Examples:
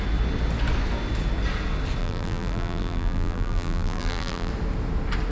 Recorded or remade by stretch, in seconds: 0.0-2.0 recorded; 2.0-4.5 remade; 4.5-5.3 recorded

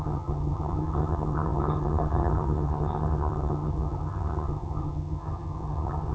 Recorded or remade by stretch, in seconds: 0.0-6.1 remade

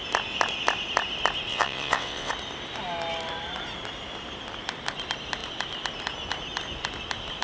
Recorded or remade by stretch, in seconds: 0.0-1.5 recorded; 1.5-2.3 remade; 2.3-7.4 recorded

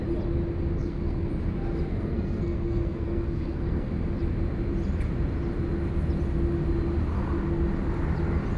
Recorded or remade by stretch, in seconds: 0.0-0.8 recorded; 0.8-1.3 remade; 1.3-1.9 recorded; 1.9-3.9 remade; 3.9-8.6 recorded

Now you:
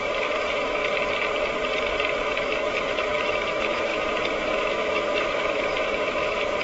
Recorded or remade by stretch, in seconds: 0.0-0.8 remade; 0.8-2.3 recorded; 2.3-6.6 remade

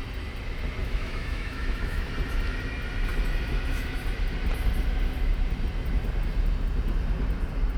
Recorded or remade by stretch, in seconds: 0.0-0.8 recorded; 0.8-2.1 remade; 2.1-7.8 recorded

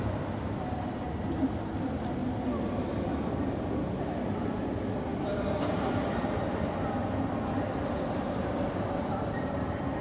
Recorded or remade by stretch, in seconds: 0.0-10.0 recorded